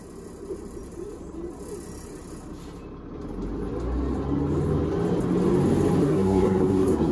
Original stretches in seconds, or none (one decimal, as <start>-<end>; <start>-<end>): 0.0-6.0